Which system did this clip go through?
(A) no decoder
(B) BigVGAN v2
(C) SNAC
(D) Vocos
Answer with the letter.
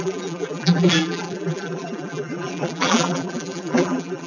B